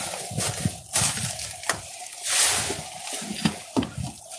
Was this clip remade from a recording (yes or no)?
no